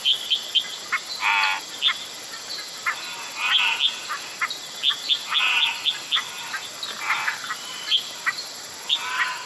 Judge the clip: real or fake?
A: real